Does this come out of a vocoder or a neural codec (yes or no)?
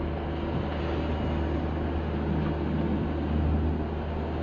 no